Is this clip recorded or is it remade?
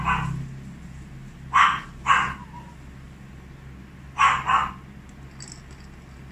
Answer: recorded